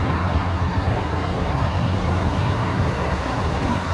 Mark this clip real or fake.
fake